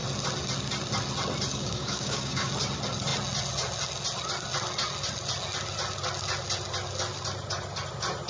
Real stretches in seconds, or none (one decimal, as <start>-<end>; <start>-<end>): 0.0-1.5; 2.5-8.3